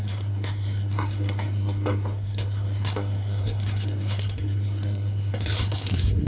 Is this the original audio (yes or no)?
no